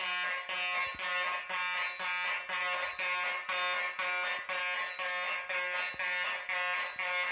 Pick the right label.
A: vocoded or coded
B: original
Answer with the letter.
B